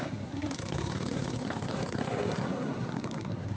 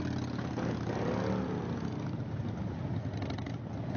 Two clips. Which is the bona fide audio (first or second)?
second